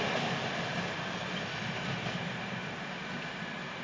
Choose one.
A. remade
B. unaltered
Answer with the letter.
B